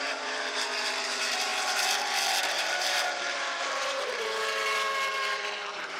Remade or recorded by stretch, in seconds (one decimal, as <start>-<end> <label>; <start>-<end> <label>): 0.0-6.0 remade